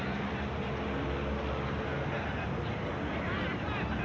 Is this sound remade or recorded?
recorded